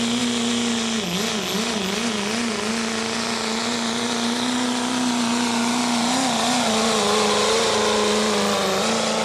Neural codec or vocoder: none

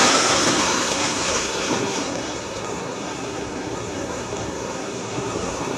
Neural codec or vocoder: codec, SNAC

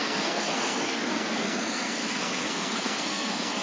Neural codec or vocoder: codec, SNAC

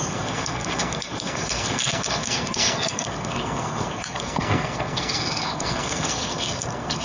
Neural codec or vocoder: codec, SNAC